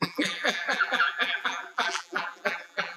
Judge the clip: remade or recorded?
remade